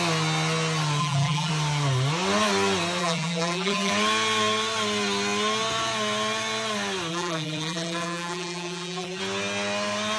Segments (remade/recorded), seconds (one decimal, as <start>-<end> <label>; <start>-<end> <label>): 0.0-1.0 recorded; 1.0-1.5 remade; 1.5-3.0 recorded; 3.0-3.9 remade; 3.9-7.1 recorded; 7.1-9.2 remade; 9.2-10.2 recorded